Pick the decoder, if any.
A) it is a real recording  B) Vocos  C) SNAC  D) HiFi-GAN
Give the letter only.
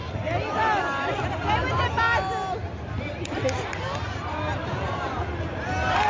A